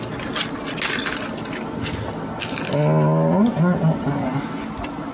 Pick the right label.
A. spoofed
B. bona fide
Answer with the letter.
B